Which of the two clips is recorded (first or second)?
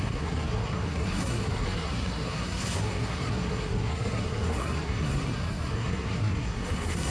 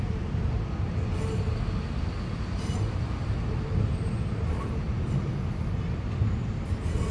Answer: second